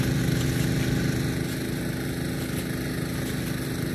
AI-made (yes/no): no